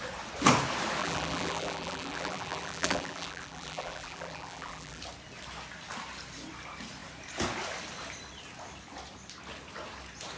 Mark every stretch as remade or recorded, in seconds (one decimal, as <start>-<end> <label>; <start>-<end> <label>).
0.0-1.0 recorded; 1.0-5.0 remade; 5.0-10.4 recorded